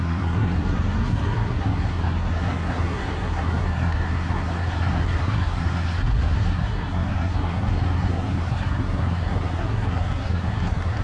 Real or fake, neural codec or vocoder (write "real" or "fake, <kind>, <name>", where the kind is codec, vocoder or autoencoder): fake, codec, SNAC